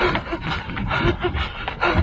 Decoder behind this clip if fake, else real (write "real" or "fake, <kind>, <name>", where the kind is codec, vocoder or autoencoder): real